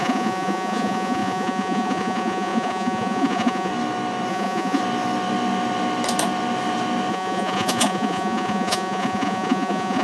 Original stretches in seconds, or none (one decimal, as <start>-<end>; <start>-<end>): 3.7-4.3; 4.8-7.1